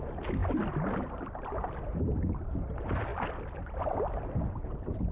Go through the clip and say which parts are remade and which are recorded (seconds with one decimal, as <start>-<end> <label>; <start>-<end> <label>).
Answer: 0.0-5.1 recorded